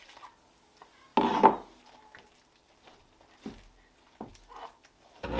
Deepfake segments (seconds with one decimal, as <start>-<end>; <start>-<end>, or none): none